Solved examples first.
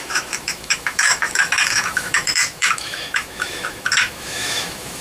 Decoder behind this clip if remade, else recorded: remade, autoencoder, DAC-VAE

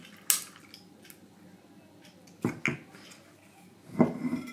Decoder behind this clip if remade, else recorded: recorded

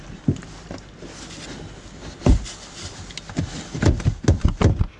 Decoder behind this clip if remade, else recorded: recorded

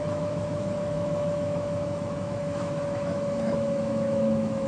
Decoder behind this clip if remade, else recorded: remade, autoencoder, DAC-VAE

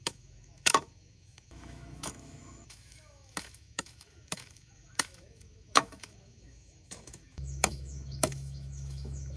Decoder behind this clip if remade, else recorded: remade, autoencoder, DAC-VAE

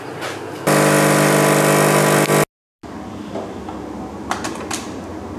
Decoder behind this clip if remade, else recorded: recorded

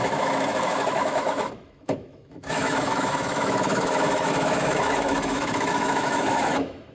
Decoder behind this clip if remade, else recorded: remade, autoencoder, DAC-VAE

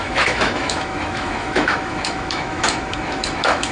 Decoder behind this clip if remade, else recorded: remade, autoencoder, DAC-VAE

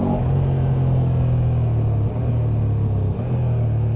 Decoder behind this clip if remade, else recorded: recorded